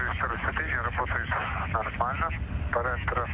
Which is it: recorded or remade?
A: recorded